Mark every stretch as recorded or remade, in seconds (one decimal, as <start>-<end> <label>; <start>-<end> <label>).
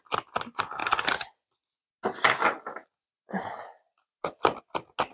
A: 0.0-5.1 recorded